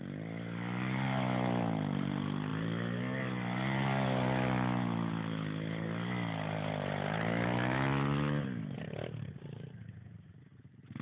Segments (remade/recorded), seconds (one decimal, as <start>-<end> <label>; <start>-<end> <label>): 0.0-11.0 recorded